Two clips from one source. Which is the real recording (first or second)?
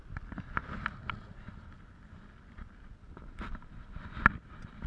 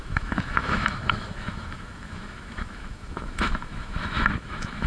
first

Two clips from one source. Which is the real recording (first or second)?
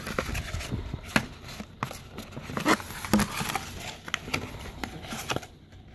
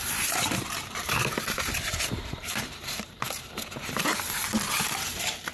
first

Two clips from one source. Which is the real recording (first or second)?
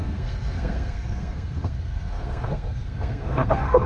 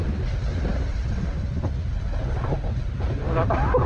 second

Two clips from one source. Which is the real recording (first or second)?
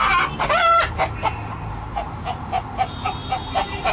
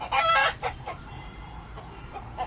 first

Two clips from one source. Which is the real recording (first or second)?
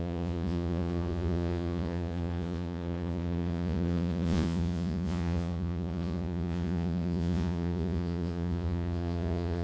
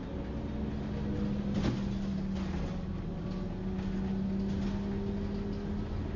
second